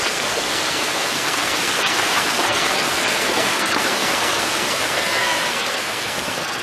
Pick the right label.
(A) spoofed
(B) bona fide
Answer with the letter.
A